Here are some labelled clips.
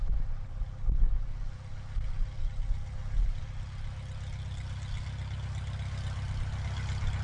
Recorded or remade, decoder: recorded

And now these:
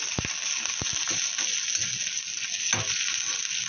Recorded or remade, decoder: recorded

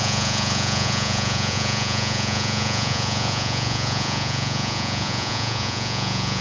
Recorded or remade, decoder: remade, vocoder, Vocos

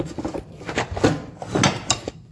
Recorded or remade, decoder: recorded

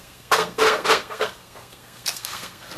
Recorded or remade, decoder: remade, codec, SNAC